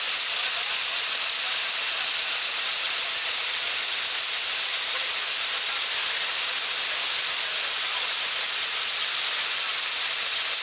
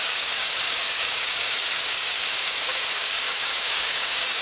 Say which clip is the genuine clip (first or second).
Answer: first